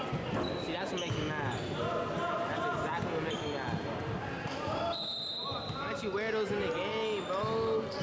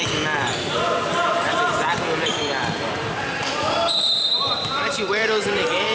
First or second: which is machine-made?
second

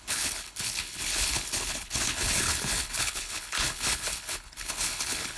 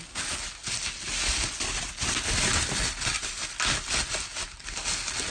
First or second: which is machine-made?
first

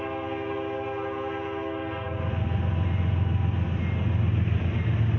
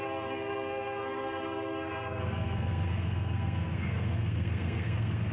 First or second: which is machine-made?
second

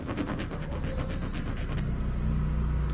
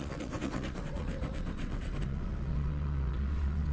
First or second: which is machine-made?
second